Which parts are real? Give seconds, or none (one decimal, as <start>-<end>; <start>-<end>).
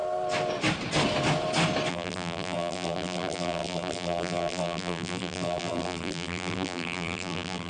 0.0-1.9